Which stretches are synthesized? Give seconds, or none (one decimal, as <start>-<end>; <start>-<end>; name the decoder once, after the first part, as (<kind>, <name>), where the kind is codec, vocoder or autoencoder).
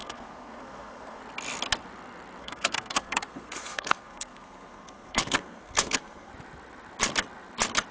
0.0-1.2 (codec, SNAC); 2.4-6.3